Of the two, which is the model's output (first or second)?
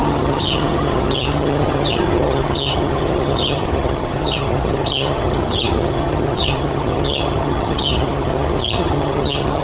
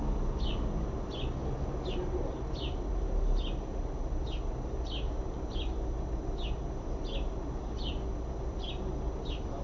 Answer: first